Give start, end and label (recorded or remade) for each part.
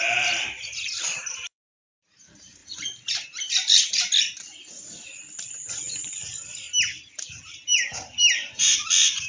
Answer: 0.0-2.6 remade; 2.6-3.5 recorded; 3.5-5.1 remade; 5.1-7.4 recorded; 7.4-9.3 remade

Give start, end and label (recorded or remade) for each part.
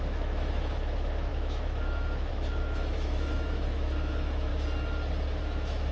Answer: 0.0-4.5 remade; 4.5-5.4 recorded; 5.4-5.9 remade